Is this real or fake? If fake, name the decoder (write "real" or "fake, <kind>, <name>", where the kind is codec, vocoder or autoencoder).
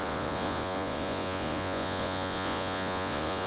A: fake, vocoder, Vocos